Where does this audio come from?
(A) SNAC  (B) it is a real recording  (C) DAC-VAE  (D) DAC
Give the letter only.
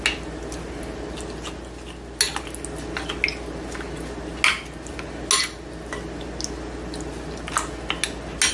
B